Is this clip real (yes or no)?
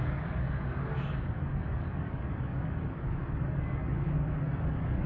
no